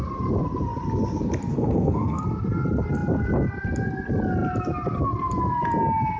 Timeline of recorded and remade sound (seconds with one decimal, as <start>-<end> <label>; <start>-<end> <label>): 0.0-1.5 recorded; 1.5-2.2 remade; 2.2-6.2 recorded